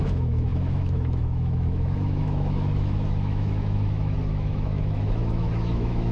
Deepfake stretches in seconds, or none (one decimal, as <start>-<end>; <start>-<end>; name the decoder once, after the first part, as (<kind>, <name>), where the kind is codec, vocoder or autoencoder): 0.0-6.1 (autoencoder, DAC-VAE)